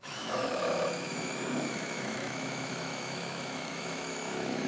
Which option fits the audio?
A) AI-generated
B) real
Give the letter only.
A